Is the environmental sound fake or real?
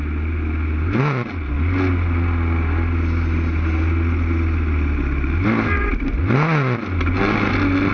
real